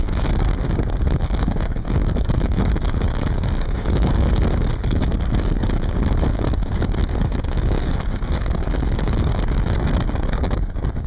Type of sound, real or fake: fake